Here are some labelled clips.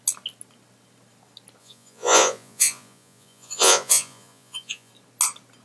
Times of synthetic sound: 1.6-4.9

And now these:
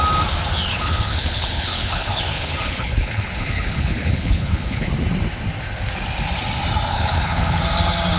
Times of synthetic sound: 0.7-4.9; 6.9-7.6